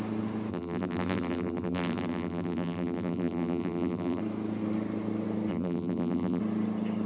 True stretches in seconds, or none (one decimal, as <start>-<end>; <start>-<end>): 0.0-0.5; 4.2-5.5; 6.4-7.1